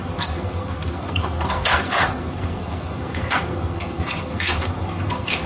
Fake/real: fake